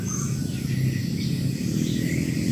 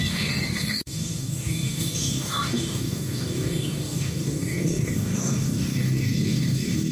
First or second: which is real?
first